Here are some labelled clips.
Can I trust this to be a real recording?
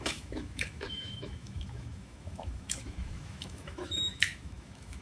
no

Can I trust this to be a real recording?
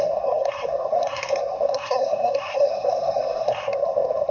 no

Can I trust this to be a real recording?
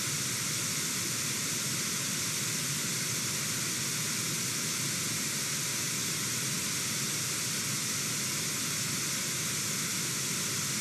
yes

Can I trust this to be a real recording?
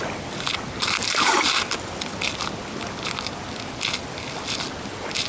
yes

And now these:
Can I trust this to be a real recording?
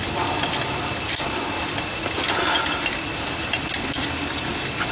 yes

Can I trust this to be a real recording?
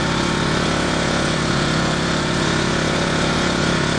no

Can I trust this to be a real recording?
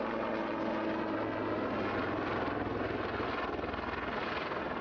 yes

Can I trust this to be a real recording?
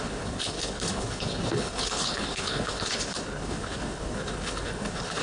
no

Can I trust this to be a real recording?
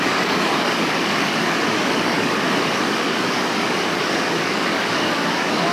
no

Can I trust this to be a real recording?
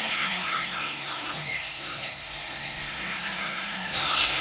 no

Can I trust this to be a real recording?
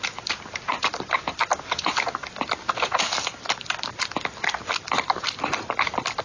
yes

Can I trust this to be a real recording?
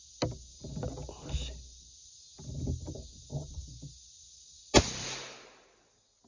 yes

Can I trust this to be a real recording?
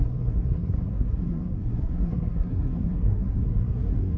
no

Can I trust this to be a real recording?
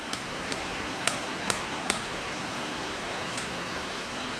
no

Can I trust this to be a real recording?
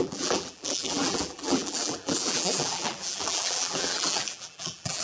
no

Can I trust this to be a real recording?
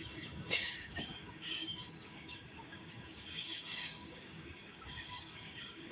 no